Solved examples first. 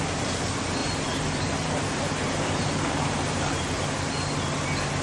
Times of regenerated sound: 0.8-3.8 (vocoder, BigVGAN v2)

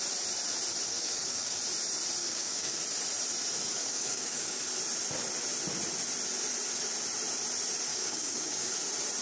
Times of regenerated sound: 0.9-1.6 (codec, DAC); 2.2-2.8; 3.8-4.6; 7.9-8.7

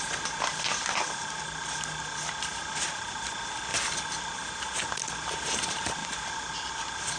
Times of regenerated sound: none

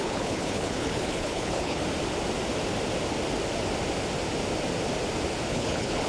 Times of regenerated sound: 0.0-1.8 (codec, HILCodec); 5.5-6.1

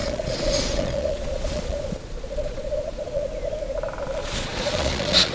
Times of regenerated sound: 0.0-3.2 (vocoder, Vocos); 4.2-5.3

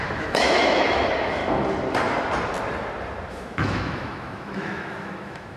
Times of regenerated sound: 0.0-1.4 (autoencoder, DAC-VAE); 3.3-5.6

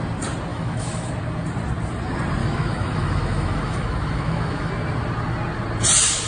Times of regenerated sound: 0.5-1.1 (autoencoder, DAC-VAE); 2.4-4.7

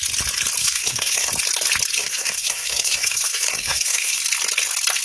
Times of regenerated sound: 0.6-1.3 (codec, SNAC); 2.0-4.2